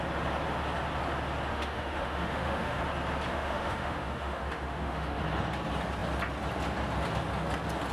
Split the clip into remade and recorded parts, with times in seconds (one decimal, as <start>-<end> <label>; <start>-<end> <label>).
0.0-1.5 recorded; 1.5-2.8 remade; 2.8-3.3 recorded; 3.3-5.2 remade; 5.2-7.9 recorded